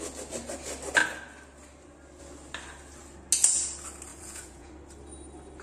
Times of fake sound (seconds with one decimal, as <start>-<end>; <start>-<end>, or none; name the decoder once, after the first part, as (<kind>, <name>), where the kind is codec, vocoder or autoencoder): 4.1-4.7 (vocoder, Vocos)